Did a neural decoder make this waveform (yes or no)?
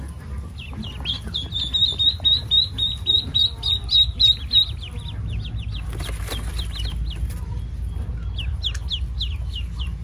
no